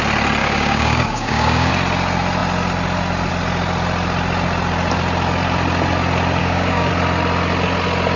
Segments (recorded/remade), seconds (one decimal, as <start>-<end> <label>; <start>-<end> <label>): 0.0-0.4 recorded; 0.4-1.7 remade; 1.7-6.4 recorded; 6.4-6.9 remade; 6.9-8.2 recorded